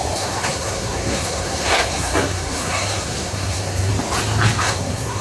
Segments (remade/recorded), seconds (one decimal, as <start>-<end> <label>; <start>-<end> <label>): 0.0-3.9 remade; 3.9-4.6 recorded; 4.6-5.2 remade